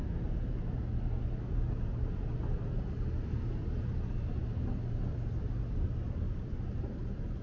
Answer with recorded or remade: recorded